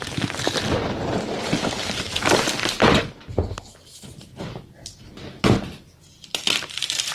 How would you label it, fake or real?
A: real